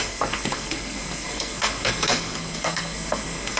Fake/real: fake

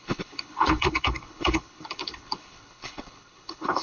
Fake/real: fake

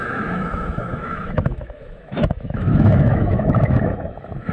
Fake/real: fake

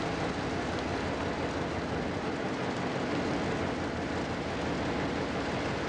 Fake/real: real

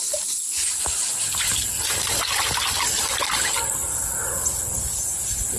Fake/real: real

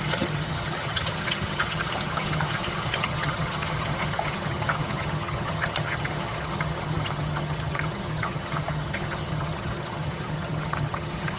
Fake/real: fake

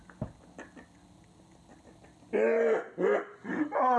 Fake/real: real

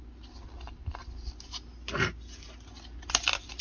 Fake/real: real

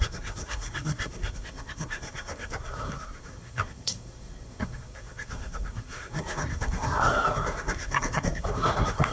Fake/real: fake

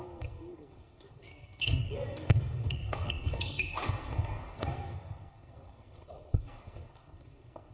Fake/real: fake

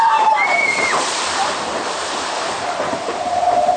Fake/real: fake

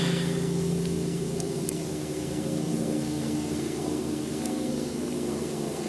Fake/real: fake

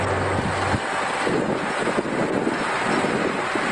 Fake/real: real